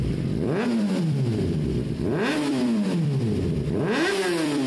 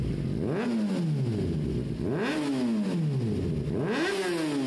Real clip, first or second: second